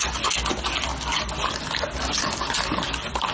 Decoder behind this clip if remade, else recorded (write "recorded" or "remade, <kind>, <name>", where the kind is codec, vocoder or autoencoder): recorded